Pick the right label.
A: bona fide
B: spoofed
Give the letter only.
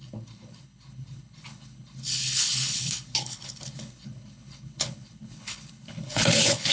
B